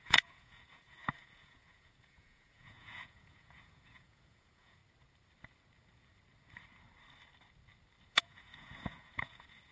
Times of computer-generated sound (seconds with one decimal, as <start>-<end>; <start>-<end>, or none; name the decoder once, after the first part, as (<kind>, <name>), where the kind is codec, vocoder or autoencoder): 0.0-4.8 (vocoder, Vocos); 8.1-9.7